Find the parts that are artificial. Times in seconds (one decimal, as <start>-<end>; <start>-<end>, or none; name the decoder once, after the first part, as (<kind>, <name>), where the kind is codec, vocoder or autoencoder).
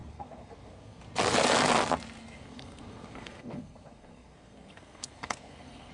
0.0-1.0 (codec, SNAC); 2.2-5.9